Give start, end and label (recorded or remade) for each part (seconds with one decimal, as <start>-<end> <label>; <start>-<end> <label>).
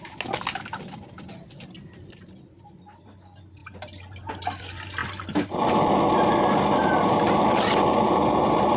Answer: 0.0-8.8 recorded